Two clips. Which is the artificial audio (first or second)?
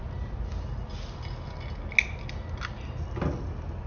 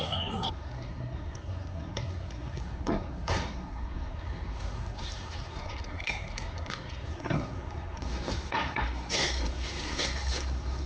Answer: second